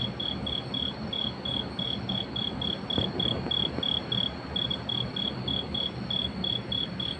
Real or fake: real